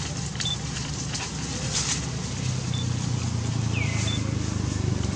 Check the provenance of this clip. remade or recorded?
recorded